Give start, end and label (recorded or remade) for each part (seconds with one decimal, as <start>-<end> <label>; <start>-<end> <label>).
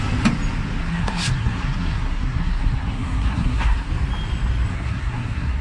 0.0-0.8 recorded; 0.8-3.9 remade; 3.9-4.7 recorded; 4.7-5.6 remade